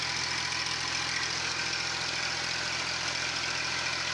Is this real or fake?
real